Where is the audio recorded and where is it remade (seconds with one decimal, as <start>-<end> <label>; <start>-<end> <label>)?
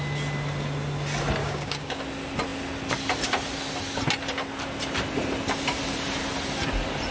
0.0-1.4 recorded; 1.4-2.0 remade; 2.0-7.1 recorded